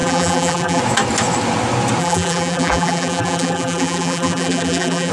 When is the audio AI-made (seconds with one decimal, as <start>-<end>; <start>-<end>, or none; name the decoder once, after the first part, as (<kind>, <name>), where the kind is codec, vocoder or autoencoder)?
0.0-0.8 (vocoder, BigVGAN v2); 2.0-5.1

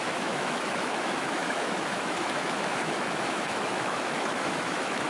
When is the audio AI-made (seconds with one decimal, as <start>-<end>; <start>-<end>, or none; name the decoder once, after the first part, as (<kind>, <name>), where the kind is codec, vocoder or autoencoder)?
0.0-5.1 (autoencoder, DAC-VAE)

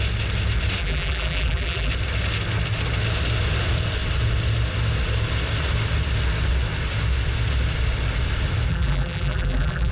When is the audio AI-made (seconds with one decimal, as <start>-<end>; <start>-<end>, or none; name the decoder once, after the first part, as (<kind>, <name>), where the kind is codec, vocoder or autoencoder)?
0.8-1.9 (vocoder, BigVGAN v2); 8.7-9.9

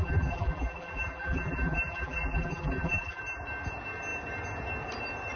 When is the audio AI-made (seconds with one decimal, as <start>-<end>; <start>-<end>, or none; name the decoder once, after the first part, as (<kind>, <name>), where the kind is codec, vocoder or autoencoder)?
0.0-3.2 (vocoder, BigVGAN v2)